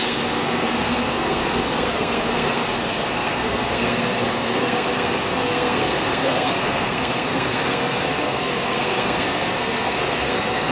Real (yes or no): no